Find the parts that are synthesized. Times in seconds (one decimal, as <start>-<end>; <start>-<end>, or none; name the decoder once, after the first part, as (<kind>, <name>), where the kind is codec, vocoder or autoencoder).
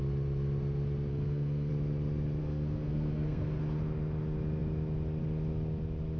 1.1-1.7 (codec, SNAC); 2.4-3.6